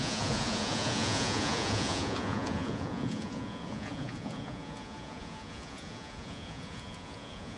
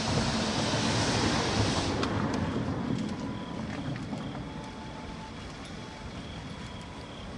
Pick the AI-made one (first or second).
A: first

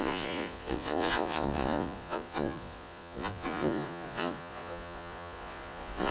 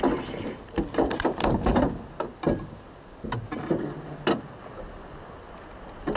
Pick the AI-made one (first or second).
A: first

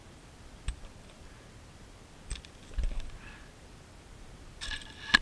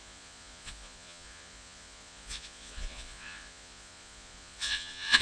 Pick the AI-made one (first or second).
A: second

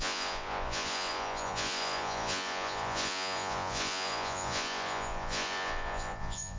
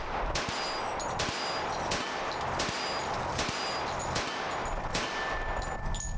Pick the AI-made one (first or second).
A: first